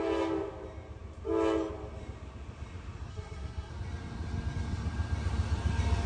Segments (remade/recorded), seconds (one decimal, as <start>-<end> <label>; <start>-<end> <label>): 0.0-3.1 recorded; 3.1-3.7 remade; 3.7-6.1 recorded